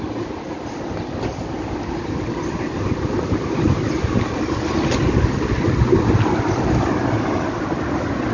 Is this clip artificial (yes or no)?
no